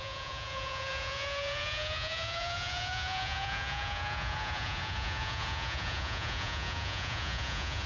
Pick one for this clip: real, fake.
fake